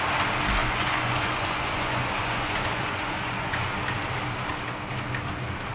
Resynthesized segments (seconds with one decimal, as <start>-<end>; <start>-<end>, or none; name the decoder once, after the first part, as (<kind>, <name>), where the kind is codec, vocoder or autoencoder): 0.6-3.6 (vocoder, Vocos)